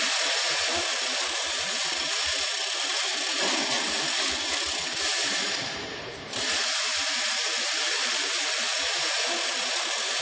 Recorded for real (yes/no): no